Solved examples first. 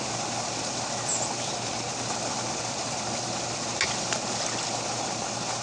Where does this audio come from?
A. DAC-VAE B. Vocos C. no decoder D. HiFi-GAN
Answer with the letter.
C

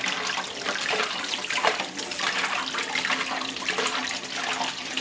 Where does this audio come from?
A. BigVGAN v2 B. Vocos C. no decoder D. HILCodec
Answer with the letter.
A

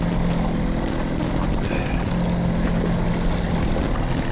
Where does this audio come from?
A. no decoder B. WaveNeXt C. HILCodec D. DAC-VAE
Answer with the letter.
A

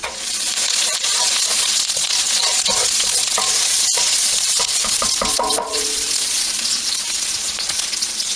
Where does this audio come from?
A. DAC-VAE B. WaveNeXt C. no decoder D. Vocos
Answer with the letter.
D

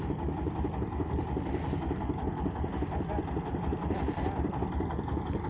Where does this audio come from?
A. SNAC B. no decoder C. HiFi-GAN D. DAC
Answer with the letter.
B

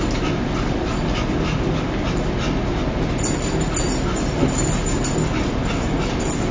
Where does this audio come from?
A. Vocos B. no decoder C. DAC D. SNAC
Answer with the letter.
B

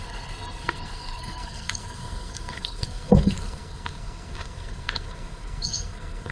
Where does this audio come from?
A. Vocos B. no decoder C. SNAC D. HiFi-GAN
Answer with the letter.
C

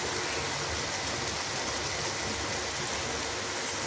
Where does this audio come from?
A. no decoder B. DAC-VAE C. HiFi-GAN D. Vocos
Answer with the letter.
A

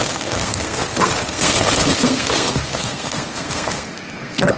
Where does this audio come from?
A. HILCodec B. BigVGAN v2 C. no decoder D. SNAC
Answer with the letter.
D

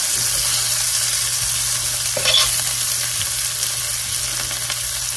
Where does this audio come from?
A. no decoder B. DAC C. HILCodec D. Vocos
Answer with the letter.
A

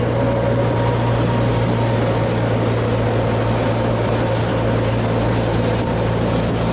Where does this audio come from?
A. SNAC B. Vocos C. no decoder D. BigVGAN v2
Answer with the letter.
C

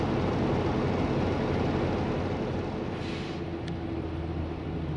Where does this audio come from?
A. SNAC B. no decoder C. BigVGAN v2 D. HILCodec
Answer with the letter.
B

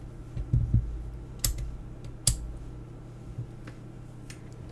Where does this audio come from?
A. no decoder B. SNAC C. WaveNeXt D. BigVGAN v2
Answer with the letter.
A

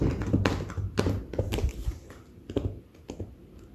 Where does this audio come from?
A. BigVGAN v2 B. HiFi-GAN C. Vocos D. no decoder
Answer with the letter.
D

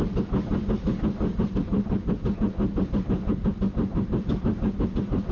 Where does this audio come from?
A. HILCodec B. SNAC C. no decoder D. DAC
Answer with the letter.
C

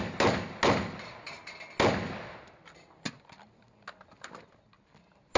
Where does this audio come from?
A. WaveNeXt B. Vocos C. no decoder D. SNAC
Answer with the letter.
C